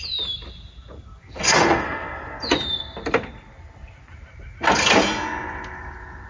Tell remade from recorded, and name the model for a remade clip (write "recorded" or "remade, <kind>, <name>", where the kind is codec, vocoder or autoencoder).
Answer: recorded